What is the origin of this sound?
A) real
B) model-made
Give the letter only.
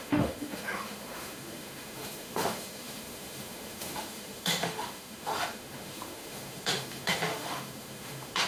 B